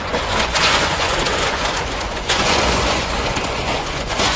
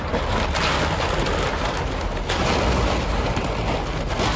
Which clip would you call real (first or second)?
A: second